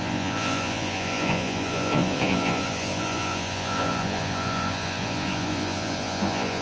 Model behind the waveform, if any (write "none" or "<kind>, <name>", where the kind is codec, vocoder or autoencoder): vocoder, Vocos